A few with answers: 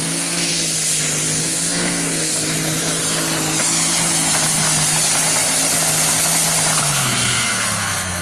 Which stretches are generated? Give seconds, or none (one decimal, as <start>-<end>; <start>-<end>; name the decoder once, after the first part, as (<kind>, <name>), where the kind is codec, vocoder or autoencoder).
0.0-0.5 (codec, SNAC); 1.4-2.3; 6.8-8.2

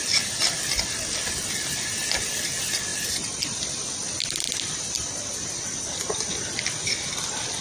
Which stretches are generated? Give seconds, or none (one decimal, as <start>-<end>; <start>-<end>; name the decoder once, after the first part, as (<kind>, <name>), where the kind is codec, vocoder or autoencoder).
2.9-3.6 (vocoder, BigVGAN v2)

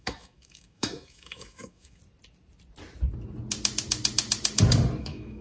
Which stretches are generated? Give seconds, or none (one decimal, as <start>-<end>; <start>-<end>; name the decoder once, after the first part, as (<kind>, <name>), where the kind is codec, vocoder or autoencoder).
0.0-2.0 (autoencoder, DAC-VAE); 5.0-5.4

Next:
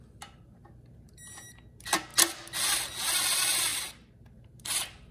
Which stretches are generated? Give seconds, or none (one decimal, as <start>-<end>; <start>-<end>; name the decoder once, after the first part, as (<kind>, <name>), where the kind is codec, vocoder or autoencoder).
none

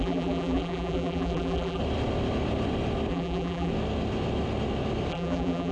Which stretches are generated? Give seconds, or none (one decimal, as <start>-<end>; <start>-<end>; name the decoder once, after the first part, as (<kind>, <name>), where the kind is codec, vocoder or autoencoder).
0.0-1.8 (vocoder, BigVGAN v2); 3.1-3.7; 5.1-5.7